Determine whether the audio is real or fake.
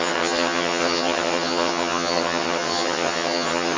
fake